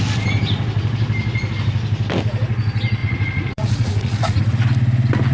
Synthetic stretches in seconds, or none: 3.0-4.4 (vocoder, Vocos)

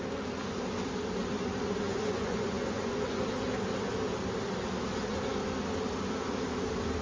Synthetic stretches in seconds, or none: 1.9-3.2 (vocoder, Vocos)

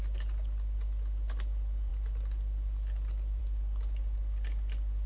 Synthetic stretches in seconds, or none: none

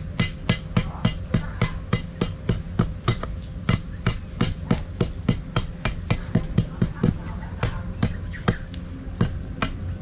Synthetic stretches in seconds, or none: none

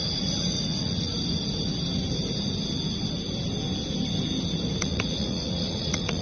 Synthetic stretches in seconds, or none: 0.0-1.1 (vocoder, Vocos); 4.8-6.2

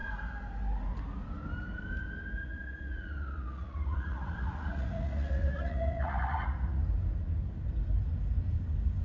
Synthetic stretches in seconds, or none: 2.4-6.8 (vocoder, Vocos)